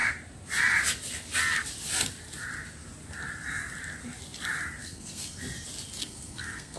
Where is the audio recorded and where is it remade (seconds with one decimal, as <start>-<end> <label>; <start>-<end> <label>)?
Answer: 0.0-4.8 recorded; 4.8-5.4 remade; 5.4-6.0 recorded; 6.0-6.8 remade